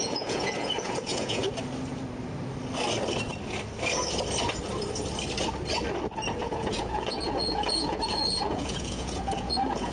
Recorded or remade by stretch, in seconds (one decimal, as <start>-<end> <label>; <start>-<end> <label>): 0.0-1.4 remade; 1.4-6.4 recorded; 6.4-9.9 remade